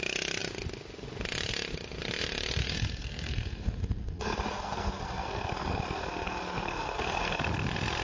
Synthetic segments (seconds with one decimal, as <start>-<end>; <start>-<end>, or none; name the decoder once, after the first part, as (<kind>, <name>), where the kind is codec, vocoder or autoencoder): 2.6-7.4 (codec, SNAC)